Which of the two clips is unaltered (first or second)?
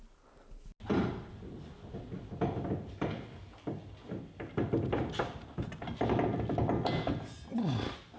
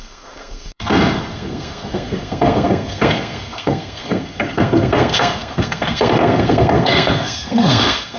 first